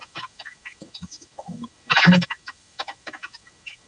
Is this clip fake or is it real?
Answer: fake